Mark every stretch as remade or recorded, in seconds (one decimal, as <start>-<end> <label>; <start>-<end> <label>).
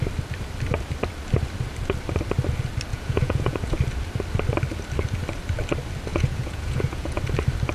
0.0-2.9 recorded; 2.9-3.7 remade; 3.7-6.1 recorded; 6.1-7.2 remade; 7.2-7.7 recorded